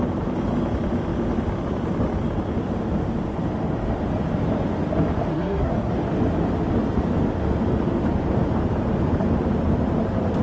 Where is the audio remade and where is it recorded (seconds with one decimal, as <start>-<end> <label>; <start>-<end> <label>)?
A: 0.0-5.3 recorded; 5.3-5.9 remade; 5.9-10.4 recorded